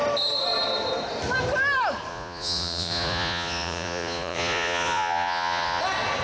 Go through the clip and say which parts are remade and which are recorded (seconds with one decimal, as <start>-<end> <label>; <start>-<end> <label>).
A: 0.0-2.1 recorded; 2.1-5.8 remade; 5.8-6.2 recorded